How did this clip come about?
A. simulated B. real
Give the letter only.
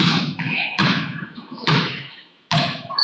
A